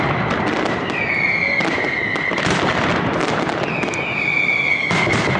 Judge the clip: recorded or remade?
recorded